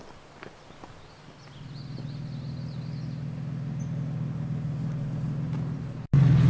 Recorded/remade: recorded